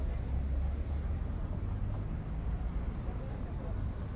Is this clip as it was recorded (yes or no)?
yes